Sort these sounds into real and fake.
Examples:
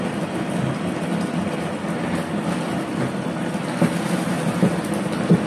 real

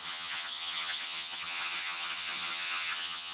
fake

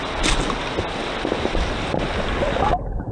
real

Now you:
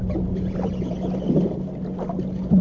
real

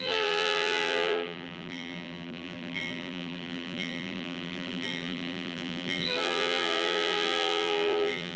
fake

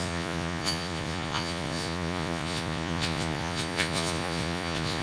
fake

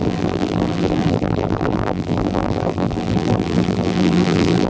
fake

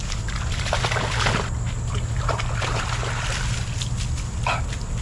real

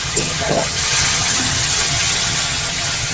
fake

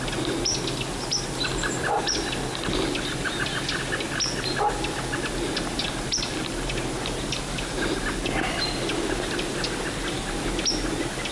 real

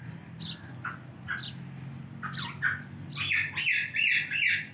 real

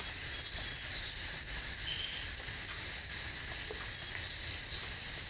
real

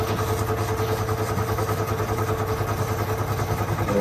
real